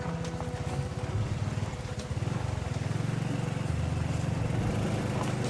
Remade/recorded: recorded